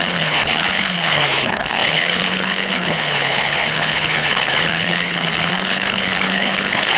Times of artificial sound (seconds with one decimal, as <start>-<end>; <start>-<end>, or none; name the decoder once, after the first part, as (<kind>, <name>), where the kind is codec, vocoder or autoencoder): 0.0-7.0 (codec, HILCodec)

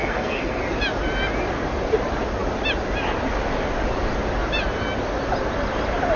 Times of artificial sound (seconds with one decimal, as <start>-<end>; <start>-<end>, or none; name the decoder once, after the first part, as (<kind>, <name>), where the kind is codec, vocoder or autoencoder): 0.0-0.6 (codec, SNAC)

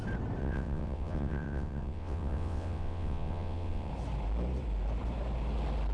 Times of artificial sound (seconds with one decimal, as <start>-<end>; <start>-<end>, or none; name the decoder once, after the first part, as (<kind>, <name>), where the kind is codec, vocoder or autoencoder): 0.4-3.9 (vocoder, WaveNeXt)

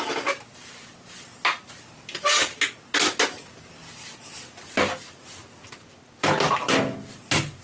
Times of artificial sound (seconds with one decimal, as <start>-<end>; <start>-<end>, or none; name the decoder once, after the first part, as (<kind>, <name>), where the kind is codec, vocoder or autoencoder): none

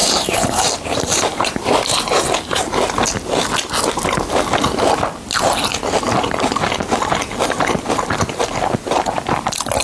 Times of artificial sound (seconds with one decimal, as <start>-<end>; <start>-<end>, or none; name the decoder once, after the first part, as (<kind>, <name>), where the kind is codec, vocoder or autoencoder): 0.0-2.2 (vocoder, BigVGAN v2)

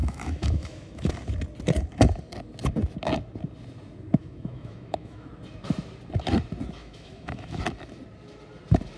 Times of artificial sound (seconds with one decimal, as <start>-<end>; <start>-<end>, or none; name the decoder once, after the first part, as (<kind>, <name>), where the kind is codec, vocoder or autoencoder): 0.0-1.1 (autoencoder, DAC-VAE); 4.2-5.3; 6.8-7.6